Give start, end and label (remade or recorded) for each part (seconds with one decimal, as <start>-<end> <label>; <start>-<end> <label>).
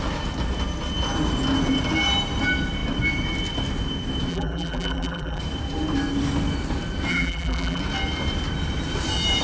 0.0-4.3 recorded; 4.3-5.4 remade; 5.4-7.1 recorded; 7.1-7.8 remade; 7.8-9.4 recorded